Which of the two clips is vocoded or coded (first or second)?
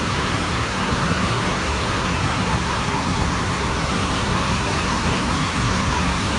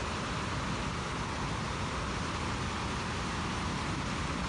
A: first